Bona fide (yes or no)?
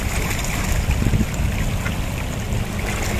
yes